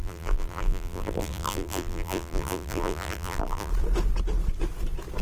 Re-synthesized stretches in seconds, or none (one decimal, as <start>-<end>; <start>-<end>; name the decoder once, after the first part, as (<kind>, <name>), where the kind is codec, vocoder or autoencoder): 0.0-3.7 (vocoder, BigVGAN v2)